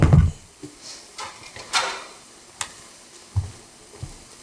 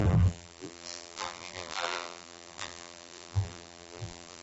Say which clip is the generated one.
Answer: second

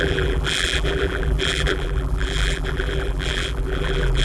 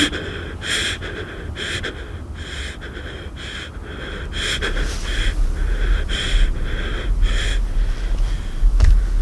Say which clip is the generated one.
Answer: first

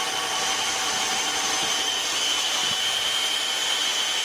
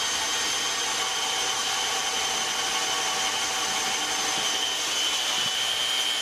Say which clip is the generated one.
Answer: first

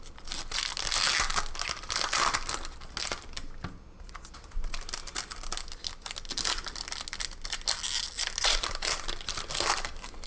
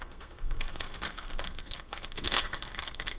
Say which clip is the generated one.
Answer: second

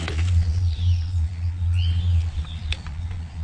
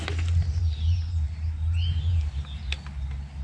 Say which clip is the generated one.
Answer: first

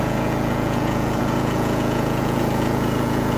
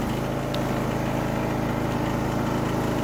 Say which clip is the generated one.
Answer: first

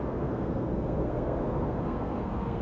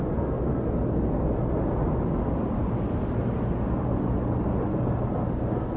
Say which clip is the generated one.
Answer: first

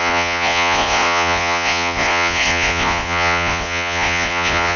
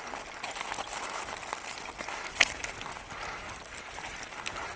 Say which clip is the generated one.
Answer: first